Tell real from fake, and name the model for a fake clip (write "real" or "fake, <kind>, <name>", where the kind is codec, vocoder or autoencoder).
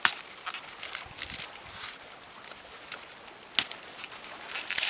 real